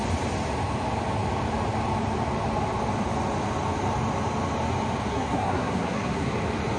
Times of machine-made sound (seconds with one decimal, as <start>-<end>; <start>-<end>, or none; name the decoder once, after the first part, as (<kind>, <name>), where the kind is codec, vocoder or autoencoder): 5.1-6.3 (codec, SNAC)